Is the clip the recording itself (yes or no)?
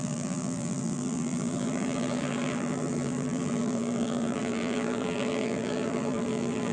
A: no